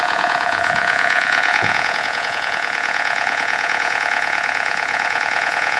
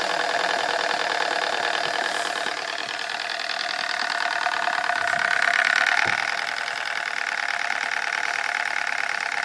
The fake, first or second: first